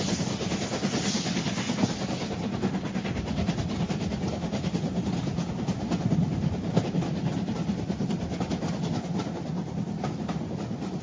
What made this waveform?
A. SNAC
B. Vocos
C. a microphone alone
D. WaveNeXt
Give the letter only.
C